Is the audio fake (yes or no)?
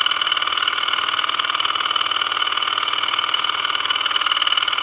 no